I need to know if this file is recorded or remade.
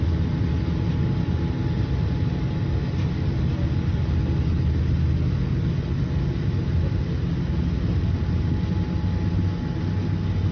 recorded